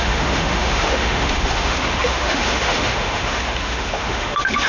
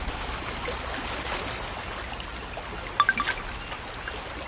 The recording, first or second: second